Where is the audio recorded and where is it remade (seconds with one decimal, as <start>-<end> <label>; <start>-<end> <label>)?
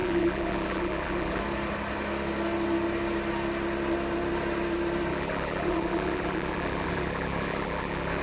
0.0-1.4 remade; 1.4-5.1 recorded; 5.1-8.2 remade